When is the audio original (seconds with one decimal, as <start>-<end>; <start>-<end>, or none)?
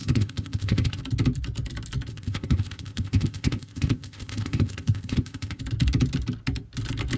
1.0-2.1; 5.6-7.2